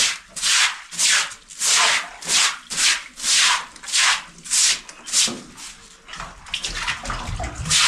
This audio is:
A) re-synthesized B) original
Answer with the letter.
B